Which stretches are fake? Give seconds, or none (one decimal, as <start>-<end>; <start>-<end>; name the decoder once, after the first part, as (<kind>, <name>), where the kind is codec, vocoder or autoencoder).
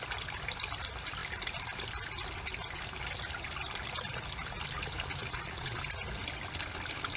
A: 5.2-5.8 (vocoder, Vocos)